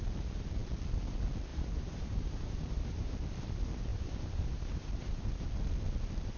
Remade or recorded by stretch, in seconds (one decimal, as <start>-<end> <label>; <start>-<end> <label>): 0.0-1.5 recorded; 1.5-3.1 remade; 3.1-3.9 recorded; 3.9-5.3 remade; 5.3-6.4 recorded